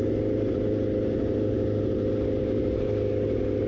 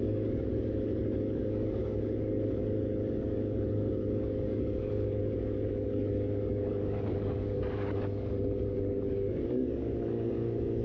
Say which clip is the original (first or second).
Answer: first